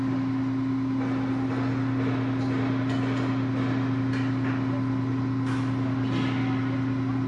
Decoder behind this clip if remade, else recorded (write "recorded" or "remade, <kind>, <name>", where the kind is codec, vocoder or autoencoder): recorded